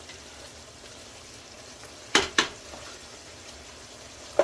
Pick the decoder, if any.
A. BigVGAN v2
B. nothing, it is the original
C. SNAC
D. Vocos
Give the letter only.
A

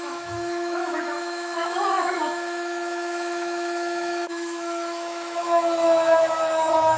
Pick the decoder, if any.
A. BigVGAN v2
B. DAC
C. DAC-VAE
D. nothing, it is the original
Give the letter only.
C